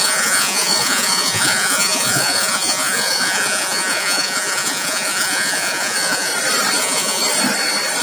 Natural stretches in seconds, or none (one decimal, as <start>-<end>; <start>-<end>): 6.3-6.8; 7.2-8.0